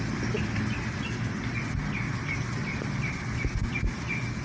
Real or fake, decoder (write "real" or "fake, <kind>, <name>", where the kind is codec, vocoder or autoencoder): real